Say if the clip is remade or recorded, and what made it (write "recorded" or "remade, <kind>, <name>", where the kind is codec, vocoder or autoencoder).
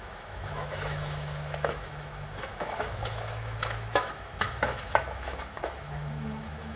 remade, autoencoder, DAC-VAE